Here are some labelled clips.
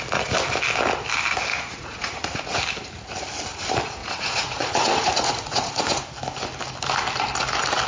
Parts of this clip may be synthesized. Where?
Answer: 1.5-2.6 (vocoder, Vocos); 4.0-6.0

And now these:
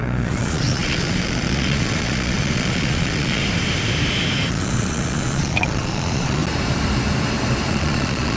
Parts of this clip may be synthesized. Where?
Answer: 0.0-3.4 (vocoder, Vocos); 4.5-6.4; 7.7-8.4

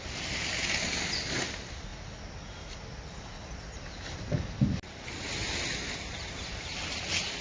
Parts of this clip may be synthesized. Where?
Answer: none

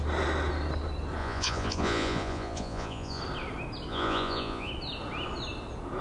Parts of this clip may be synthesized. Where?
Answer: 1.2-3.2 (vocoder, Vocos); 3.9-4.7

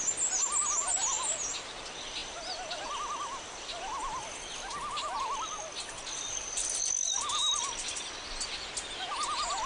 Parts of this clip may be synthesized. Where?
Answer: none

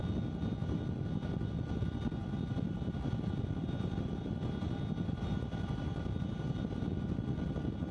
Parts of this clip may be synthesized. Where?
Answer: none

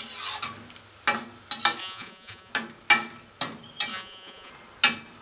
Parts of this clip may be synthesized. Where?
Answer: 1.8-2.5 (vocoder, Vocos); 3.9-4.5

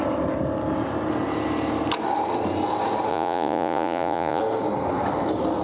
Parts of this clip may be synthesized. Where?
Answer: 3.1-4.4 (vocoder, Vocos)